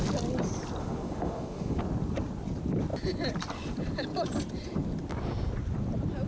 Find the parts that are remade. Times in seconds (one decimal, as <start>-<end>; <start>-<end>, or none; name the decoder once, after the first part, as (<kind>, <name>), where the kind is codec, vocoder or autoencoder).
0.8-1.8 (autoencoder, DAC-VAE)